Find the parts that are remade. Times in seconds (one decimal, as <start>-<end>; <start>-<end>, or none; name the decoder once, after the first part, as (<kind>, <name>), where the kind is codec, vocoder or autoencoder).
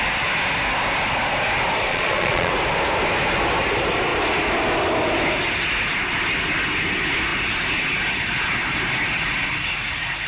1.9-2.5 (vocoder, Vocos)